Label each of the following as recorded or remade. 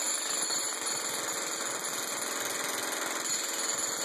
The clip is recorded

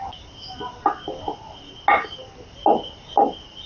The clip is recorded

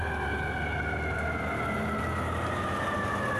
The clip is recorded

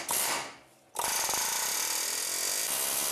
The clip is remade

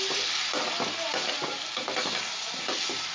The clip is recorded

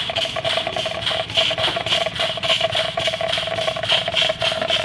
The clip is remade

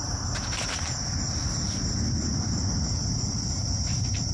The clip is remade